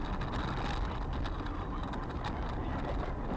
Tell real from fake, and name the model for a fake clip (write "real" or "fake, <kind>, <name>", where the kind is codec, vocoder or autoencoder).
real